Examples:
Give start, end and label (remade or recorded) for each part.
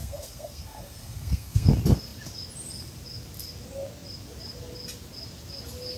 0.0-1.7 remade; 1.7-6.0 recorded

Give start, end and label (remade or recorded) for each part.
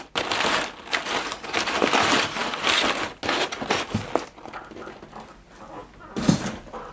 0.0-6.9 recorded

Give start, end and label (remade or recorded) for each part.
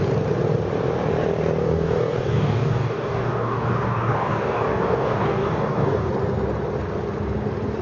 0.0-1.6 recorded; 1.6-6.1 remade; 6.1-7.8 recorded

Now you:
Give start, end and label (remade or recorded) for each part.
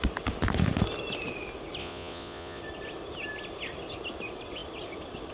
0.0-1.8 recorded; 1.8-2.6 remade; 2.6-5.3 recorded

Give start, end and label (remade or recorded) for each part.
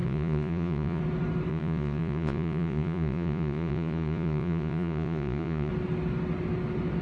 0.0-1.0 remade; 1.0-1.5 recorded; 1.5-5.7 remade; 5.7-7.0 recorded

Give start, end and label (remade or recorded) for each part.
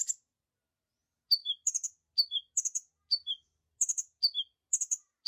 0.0-5.3 recorded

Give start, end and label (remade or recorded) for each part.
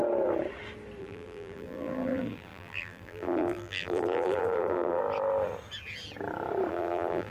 0.0-1.0 recorded; 1.0-5.0 remade; 5.0-6.7 recorded; 6.7-7.3 remade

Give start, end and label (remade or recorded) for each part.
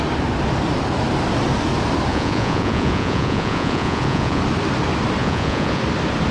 0.0-2.1 recorded; 2.1-4.4 remade; 4.4-5.2 recorded; 5.2-5.8 remade; 5.8-6.3 recorded